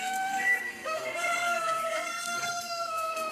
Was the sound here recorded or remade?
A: remade